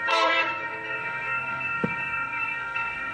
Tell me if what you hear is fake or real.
fake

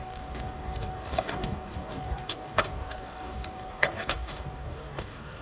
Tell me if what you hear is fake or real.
fake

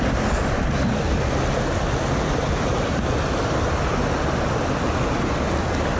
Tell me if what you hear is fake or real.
real